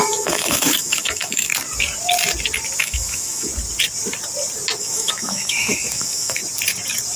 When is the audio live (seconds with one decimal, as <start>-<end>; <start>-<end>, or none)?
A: 1.5-2.8; 3.5-4.8; 6.4-7.2